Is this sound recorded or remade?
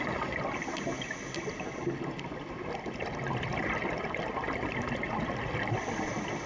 recorded